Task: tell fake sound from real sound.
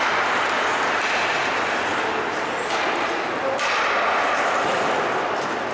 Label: real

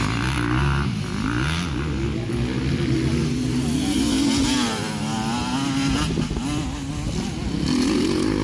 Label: real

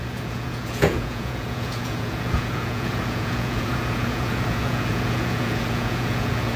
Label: fake